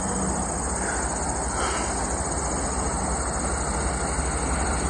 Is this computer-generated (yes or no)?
no